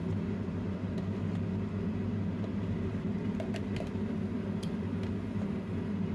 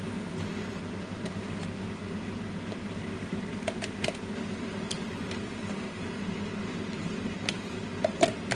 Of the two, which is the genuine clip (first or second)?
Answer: first